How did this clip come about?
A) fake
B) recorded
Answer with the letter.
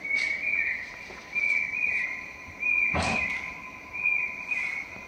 B